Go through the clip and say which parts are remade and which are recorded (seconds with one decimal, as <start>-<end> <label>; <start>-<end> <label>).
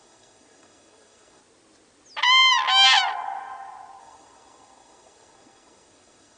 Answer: 0.0-1.4 remade; 1.4-4.0 recorded; 4.0-6.4 remade